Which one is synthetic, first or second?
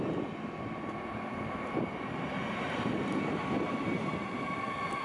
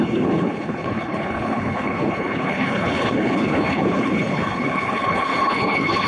second